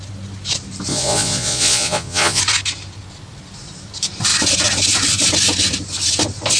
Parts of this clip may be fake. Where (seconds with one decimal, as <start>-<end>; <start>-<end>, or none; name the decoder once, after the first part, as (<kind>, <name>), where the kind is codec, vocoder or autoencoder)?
0.9-2.4 (vocoder, Vocos)